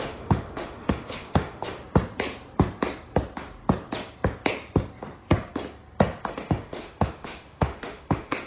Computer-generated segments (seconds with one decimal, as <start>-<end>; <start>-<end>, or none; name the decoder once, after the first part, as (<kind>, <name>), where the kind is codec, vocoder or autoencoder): 0.0-1.8 (autoencoder, DAC-VAE); 6.3-8.5